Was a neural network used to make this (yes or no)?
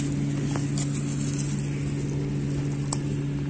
no